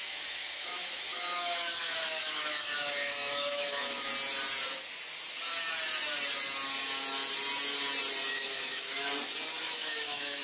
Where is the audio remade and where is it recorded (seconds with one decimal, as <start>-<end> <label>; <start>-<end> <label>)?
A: 0.0-4.1 remade; 4.1-8.3 recorded; 8.3-9.1 remade; 9.1-9.6 recorded; 9.6-10.4 remade